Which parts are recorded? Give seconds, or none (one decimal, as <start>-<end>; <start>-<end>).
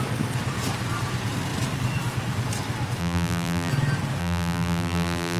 0.0-3.0; 3.7-4.2